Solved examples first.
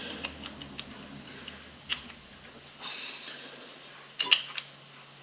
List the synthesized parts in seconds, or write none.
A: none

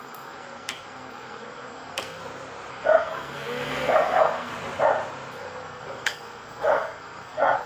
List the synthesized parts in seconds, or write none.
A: 0.0-2.2 (codec, SNAC); 2.7-4.5; 5.3-7.7

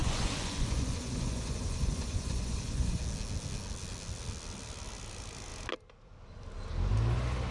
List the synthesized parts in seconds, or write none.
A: 0.0-3.0 (vocoder, Vocos)

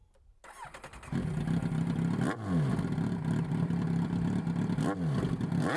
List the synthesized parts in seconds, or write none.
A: none

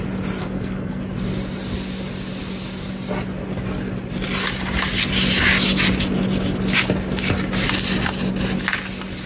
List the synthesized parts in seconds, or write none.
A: 0.4-1.0 (codec, SNAC)